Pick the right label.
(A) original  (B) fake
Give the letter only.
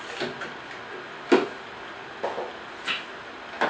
A